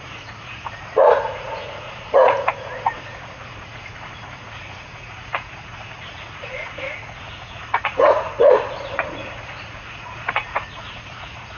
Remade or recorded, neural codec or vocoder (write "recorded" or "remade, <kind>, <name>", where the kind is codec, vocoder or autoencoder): remade, vocoder, Vocos